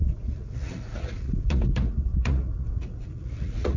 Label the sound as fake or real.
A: fake